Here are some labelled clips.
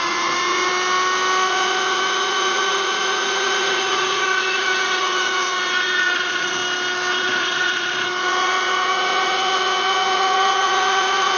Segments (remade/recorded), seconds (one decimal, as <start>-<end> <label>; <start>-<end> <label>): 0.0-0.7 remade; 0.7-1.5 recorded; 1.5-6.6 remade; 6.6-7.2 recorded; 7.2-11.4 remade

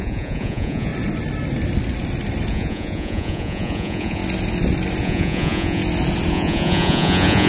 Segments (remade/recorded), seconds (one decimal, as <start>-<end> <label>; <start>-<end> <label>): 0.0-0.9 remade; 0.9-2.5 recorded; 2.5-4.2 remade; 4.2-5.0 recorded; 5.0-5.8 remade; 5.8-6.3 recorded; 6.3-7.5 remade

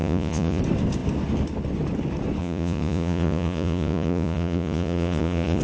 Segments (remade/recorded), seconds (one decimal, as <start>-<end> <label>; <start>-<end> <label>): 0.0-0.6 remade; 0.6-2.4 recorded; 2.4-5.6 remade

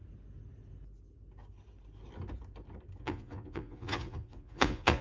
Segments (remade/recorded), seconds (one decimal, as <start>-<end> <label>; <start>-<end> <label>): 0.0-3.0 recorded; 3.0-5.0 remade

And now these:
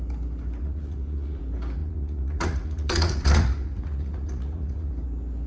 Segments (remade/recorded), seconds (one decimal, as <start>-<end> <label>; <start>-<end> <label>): 0.0-0.6 recorded; 0.6-1.4 remade; 1.4-1.8 recorded; 1.8-4.9 remade; 4.9-5.5 recorded

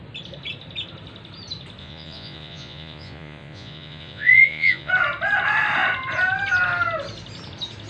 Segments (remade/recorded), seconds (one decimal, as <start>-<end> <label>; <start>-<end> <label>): 0.0-1.8 recorded; 1.8-4.9 remade; 4.9-7.9 recorded

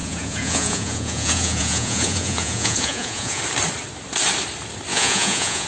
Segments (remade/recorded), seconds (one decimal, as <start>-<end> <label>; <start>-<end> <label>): 0.0-3.4 remade; 3.4-4.9 recorded; 4.9-5.7 remade